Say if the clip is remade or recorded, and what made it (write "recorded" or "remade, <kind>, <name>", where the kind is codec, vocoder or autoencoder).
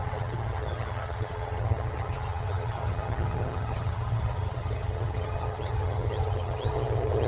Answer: remade, vocoder, HiFi-GAN